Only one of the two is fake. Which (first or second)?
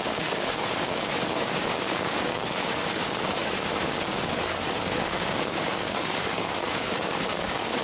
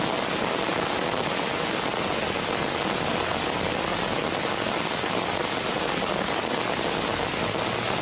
first